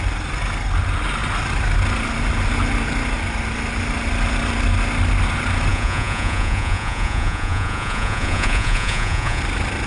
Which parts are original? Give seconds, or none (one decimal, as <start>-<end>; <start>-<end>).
0.0-5.7; 9.4-9.9